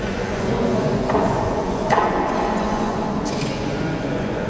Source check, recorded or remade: remade